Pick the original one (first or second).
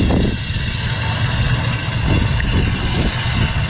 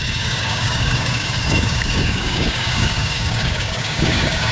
first